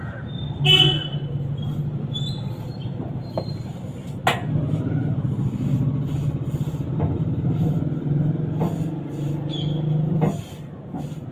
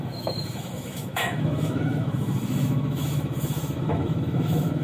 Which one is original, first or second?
first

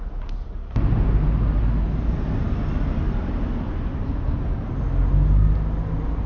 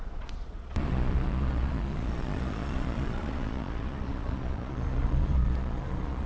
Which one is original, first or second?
first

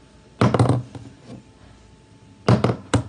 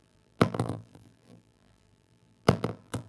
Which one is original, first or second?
first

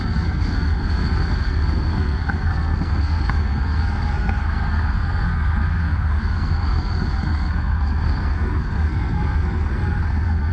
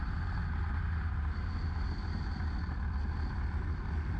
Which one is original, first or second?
second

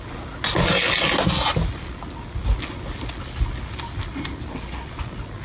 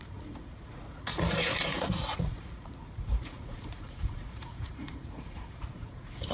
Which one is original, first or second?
first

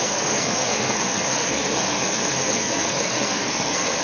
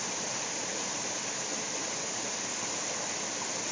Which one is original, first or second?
second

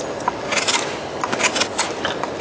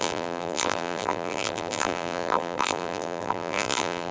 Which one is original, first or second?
first